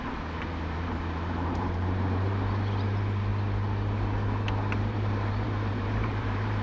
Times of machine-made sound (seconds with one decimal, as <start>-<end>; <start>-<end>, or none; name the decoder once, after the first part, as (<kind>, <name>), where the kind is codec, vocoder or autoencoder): 0.0-3.3 (vocoder, BigVGAN v2); 4.8-6.6